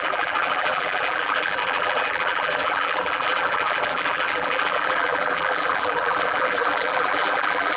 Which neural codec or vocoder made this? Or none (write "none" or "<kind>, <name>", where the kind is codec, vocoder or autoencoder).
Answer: vocoder, BigVGAN v2